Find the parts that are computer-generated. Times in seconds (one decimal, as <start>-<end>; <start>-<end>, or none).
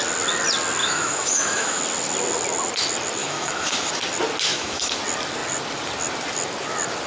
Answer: 0.8-1.8; 3.2-3.9; 4.5-5.0